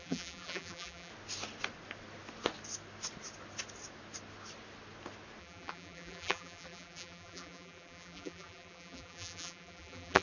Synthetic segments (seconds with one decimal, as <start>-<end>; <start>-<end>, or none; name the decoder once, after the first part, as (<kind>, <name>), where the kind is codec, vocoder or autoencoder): 0.0-1.1 (vocoder, BigVGAN v2); 5.4-10.2